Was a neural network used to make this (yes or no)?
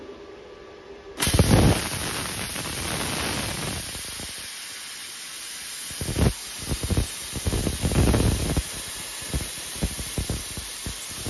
no